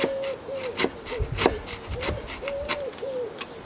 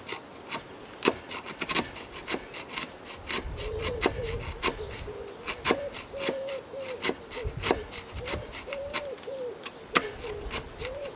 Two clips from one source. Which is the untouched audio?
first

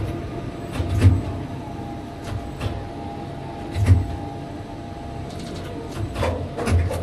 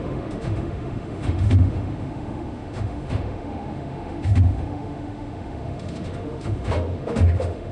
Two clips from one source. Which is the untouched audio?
first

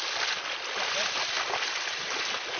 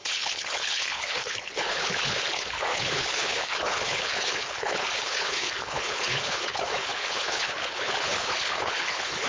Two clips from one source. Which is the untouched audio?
first